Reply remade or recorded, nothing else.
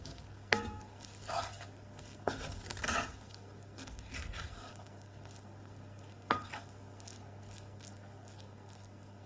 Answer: remade